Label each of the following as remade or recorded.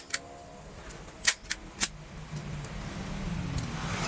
recorded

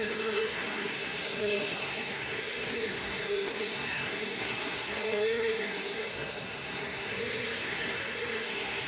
remade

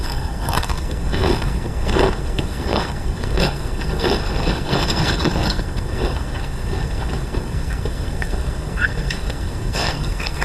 remade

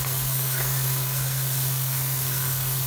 remade